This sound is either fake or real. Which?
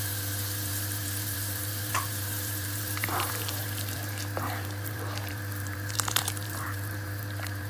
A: fake